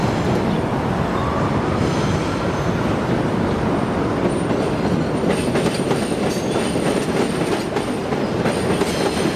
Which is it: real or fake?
real